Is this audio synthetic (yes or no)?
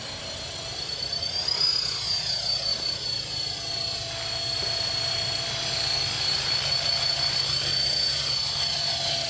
no